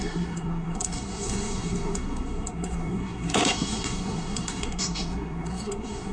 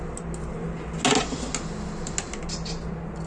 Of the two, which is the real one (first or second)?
second